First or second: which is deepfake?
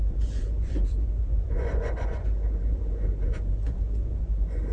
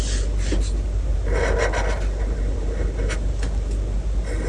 first